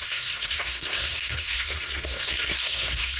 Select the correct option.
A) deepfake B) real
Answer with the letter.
A